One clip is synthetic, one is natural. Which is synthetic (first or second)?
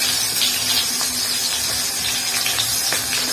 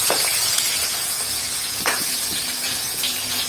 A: second